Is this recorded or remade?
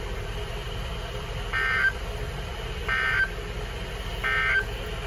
remade